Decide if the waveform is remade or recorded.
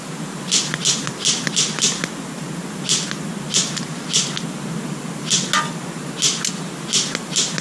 recorded